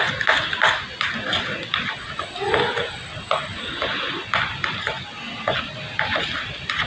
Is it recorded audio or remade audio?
recorded